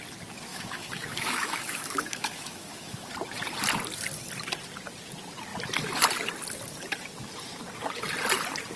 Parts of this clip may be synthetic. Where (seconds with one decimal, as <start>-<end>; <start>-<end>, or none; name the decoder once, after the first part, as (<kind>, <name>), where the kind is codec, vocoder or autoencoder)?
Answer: 0.5-3.1 (autoencoder, DAC-VAE)